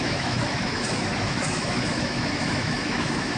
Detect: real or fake fake